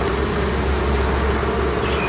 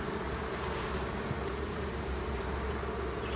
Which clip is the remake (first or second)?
second